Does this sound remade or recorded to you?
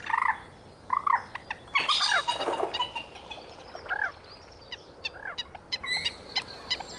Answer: recorded